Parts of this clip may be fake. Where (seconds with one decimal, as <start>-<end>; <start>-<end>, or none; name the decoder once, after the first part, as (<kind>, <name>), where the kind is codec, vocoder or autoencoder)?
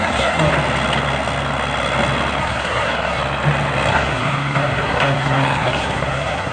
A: 0.0-0.5 (codec, SNAC); 2.4-3.2; 3.9-6.5